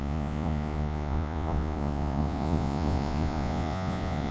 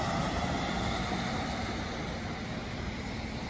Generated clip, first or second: first